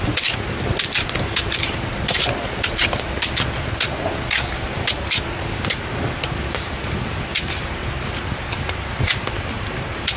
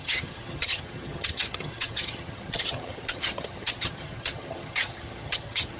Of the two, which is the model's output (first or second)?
second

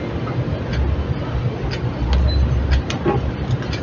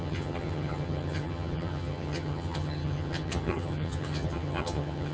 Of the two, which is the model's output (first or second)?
second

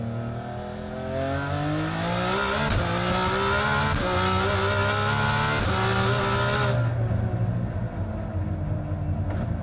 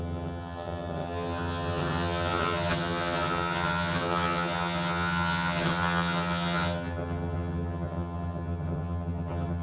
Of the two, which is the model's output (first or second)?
second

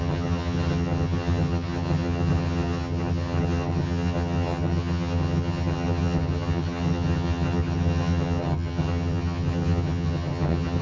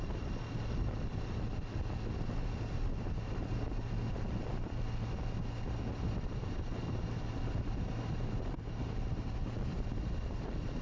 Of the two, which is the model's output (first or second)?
first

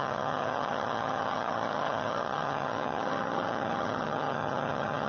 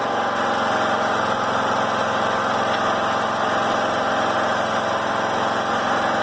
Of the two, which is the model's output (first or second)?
first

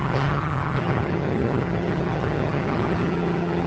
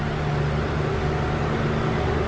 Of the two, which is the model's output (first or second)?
first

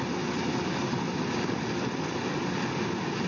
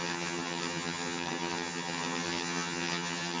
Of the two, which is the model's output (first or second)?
second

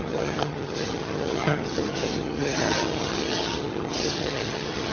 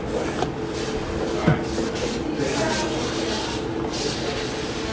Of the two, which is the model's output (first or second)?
first